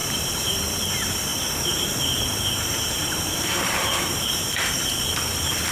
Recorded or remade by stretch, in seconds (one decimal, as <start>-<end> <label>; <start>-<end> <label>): 0.0-0.6 remade; 0.6-1.3 recorded; 1.3-4.7 remade; 4.7-5.7 recorded